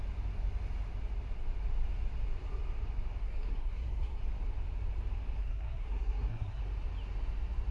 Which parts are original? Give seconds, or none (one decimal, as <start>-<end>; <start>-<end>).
0.0-3.2; 4.2-5.4; 6.6-7.7